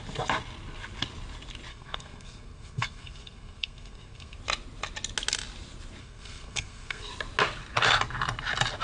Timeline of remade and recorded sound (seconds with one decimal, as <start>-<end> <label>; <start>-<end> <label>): 0.0-1.7 recorded; 1.7-4.4 remade; 4.4-6.0 recorded; 6.0-7.1 remade; 7.1-8.8 recorded